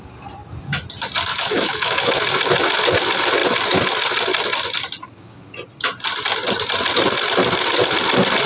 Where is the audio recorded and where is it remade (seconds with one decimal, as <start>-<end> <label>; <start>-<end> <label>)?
0.0-1.3 recorded; 1.3-2.1 remade; 2.1-8.5 recorded